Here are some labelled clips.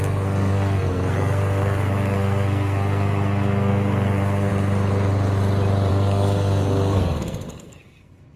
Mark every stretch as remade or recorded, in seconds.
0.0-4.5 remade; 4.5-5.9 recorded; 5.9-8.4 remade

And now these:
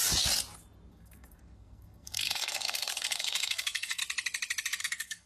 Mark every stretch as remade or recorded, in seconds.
0.0-0.9 recorded; 0.9-4.0 remade; 4.0-4.8 recorded; 4.8-5.3 remade

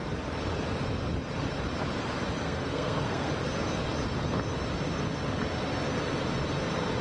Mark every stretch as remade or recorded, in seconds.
0.0-2.4 recorded; 2.4-3.3 remade; 3.3-7.0 recorded